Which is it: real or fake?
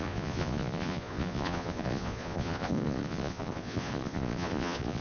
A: fake